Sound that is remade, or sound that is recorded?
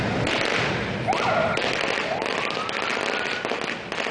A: recorded